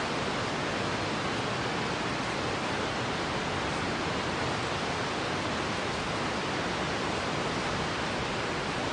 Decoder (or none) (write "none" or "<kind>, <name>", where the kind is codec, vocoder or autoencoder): none